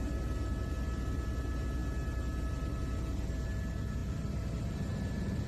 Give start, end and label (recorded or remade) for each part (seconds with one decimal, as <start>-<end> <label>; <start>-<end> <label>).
0.0-5.5 recorded